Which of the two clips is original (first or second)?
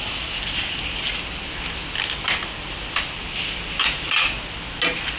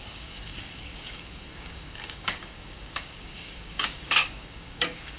first